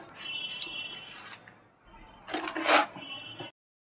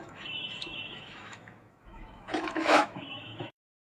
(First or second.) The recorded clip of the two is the first